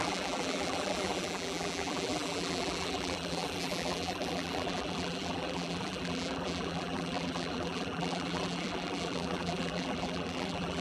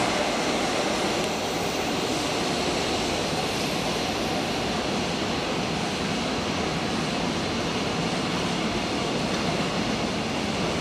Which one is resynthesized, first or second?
first